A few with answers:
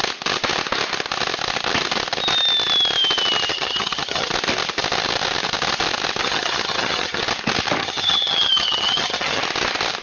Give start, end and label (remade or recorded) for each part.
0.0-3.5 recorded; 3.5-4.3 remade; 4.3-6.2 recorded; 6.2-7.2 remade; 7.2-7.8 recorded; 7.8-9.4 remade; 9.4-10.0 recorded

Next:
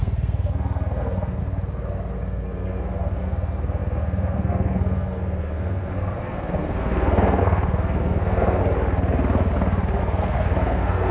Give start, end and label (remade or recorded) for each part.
0.0-1.4 remade; 1.4-2.2 recorded; 2.2-8.6 remade; 8.6-10.0 recorded; 10.0-11.1 remade